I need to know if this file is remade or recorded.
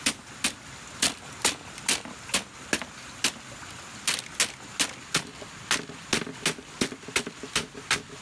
recorded